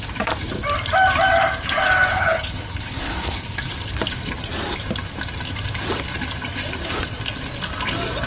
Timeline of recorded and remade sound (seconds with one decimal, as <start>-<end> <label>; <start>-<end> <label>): 0.0-2.1 recorded; 2.1-3.7 remade; 3.7-8.3 recorded